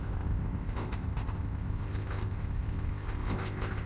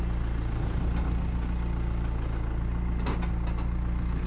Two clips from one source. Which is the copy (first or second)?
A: first